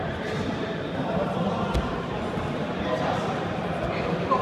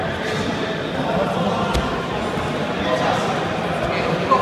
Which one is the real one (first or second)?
second